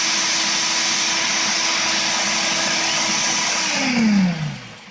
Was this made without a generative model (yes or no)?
yes